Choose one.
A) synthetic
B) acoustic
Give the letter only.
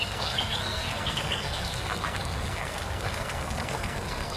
A